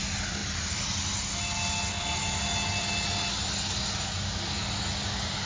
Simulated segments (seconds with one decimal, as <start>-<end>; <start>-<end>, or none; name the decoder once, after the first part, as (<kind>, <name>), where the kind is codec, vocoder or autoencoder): none

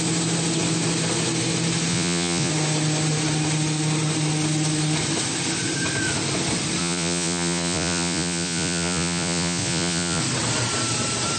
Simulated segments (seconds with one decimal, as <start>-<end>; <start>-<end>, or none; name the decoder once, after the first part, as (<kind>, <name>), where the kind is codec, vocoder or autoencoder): 1.9-2.5 (vocoder, Vocos); 6.8-10.2

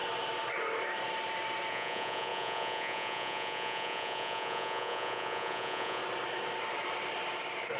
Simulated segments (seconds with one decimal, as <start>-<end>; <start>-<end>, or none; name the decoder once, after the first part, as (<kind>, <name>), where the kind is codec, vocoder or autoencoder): 1.7-6.0 (vocoder, Vocos)